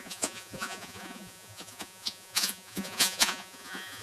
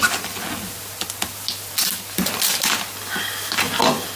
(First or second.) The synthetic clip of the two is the first